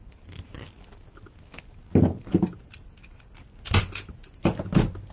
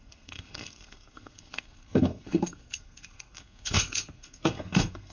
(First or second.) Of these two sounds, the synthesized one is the second